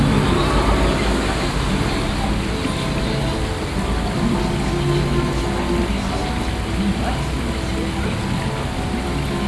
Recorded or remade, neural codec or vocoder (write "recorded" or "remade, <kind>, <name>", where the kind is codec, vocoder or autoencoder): recorded